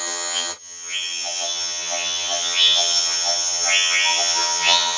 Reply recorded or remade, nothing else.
remade